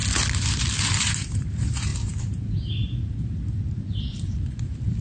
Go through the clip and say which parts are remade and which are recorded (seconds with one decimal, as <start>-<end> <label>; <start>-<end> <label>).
0.0-1.0 recorded; 1.0-5.0 remade